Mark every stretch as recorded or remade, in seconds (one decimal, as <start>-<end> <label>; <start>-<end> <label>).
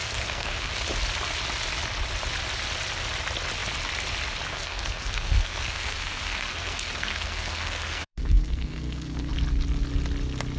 0.0-0.7 remade; 0.7-4.5 recorded; 4.5-9.3 remade; 9.3-10.6 recorded